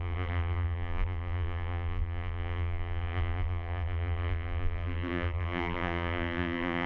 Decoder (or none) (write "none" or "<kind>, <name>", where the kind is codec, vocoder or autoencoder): vocoder, BigVGAN v2